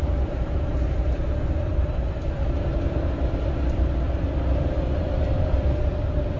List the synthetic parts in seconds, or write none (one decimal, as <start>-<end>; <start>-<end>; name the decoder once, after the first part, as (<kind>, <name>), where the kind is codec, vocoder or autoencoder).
1.7-2.3 (vocoder, BigVGAN v2)